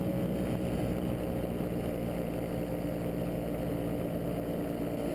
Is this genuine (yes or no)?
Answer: yes